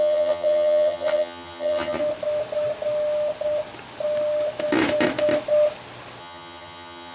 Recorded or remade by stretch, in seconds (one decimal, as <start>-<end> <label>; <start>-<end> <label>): 0.0-2.0 remade; 2.0-6.2 recorded; 6.2-7.1 remade